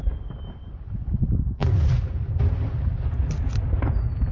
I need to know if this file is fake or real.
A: real